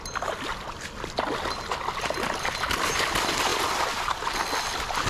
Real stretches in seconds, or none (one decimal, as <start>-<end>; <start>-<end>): 0.0-5.1